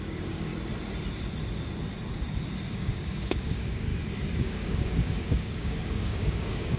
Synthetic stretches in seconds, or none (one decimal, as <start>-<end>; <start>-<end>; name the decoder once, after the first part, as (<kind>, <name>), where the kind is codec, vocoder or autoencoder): 0.0-0.5 (codec, DAC); 2.7-3.9; 4.4-6.8